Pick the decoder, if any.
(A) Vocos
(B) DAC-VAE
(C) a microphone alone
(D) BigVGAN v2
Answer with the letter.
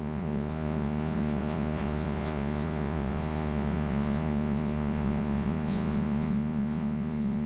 A